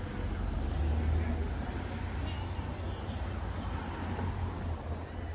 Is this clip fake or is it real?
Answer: real